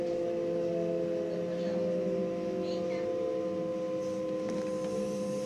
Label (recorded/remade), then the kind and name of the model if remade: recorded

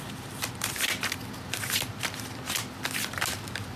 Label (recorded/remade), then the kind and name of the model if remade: recorded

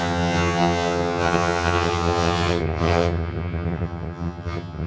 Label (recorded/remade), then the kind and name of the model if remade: remade, vocoder, HiFi-GAN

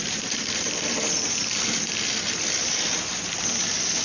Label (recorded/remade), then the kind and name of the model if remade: recorded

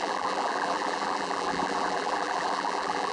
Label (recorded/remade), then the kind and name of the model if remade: remade, vocoder, BigVGAN v2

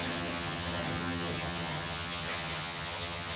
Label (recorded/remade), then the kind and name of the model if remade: remade, vocoder, HiFi-GAN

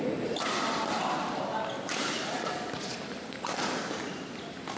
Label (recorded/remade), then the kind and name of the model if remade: recorded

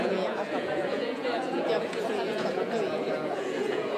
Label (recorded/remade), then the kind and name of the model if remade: remade, vocoder, Vocos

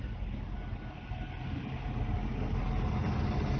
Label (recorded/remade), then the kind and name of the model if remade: recorded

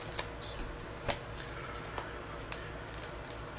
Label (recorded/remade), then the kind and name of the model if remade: recorded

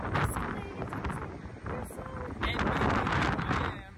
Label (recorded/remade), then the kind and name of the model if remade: recorded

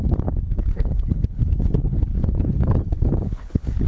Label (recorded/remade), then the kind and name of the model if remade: remade, codec, HILCodec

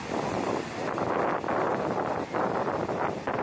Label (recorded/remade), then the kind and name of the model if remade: recorded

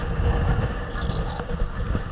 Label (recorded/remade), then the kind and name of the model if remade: recorded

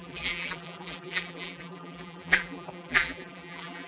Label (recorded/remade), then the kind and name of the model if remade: remade, vocoder, BigVGAN v2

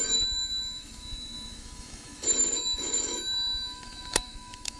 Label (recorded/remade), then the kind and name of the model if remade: remade, autoencoder, DAC-VAE